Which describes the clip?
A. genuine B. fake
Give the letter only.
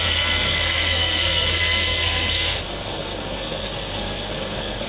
B